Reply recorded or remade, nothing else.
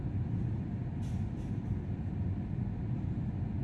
recorded